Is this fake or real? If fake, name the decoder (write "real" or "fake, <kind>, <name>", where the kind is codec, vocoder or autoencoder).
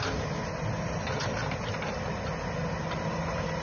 real